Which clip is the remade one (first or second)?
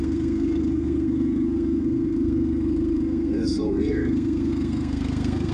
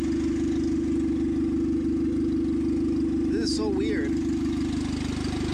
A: first